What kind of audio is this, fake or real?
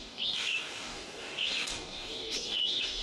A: fake